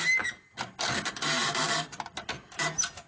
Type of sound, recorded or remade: recorded